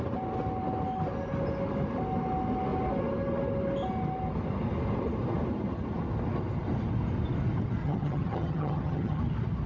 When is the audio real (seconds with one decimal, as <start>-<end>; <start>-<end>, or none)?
0.0-7.8; 9.2-9.7